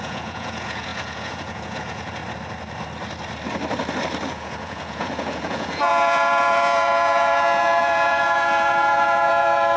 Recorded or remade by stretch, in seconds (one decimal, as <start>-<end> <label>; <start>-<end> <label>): 0.0-2.2 remade; 2.2-4.3 recorded; 4.3-9.8 remade